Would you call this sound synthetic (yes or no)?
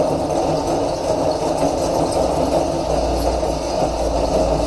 no